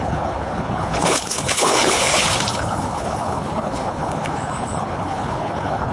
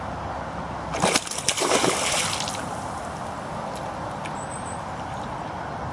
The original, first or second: second